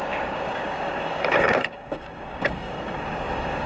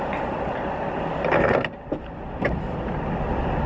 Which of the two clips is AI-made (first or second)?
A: first